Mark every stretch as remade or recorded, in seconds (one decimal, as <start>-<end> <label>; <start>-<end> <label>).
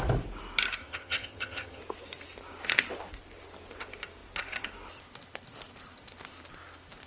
0.0-0.8 recorded; 0.8-1.8 remade; 1.8-7.1 recorded